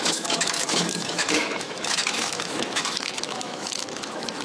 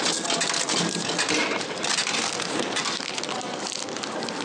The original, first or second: second